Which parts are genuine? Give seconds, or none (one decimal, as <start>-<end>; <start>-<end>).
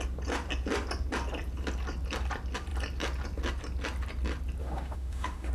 0.0-4.6